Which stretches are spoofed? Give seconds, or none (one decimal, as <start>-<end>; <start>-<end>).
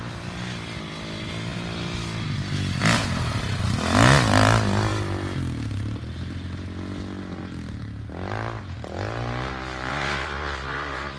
9.9-11.2